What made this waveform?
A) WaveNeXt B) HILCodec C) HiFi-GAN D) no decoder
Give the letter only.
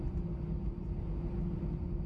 D